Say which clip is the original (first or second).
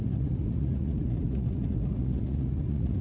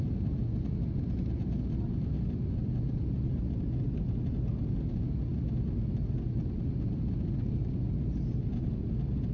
second